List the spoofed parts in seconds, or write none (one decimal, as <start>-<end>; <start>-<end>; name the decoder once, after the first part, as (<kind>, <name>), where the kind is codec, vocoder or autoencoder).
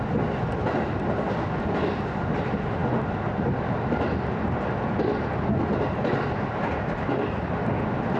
none